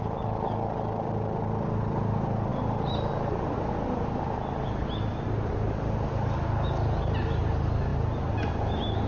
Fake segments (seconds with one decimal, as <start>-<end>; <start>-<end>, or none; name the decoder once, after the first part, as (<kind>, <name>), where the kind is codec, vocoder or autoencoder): 2.5-3.7 (vocoder, BigVGAN v2)